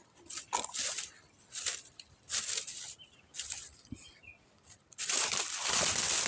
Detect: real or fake fake